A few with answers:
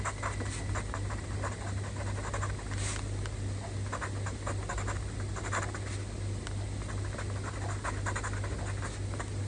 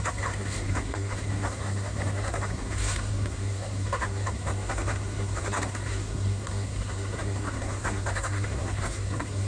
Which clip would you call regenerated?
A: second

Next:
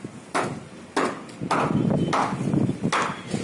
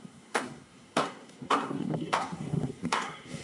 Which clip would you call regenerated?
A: second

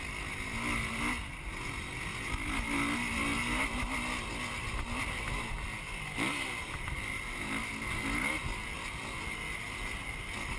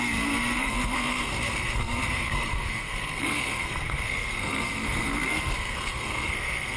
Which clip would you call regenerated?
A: second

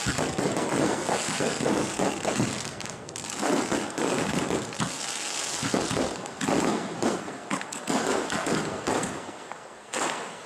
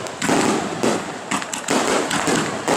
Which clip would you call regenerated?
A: first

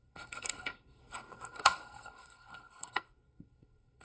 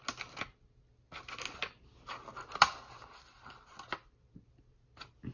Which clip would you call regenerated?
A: first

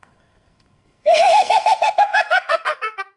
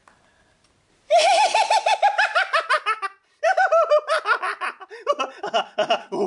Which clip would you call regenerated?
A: first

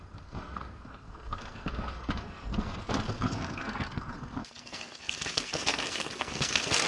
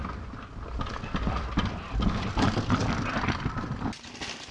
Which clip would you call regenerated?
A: first